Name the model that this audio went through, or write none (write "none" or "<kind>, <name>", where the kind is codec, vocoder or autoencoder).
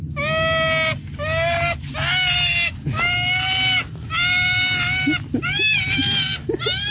none